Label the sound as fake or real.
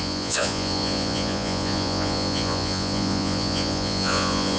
fake